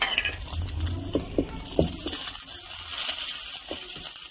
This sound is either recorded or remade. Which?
recorded